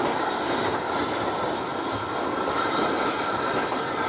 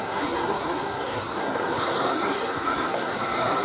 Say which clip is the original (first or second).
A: first